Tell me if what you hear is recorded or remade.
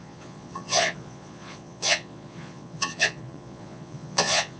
remade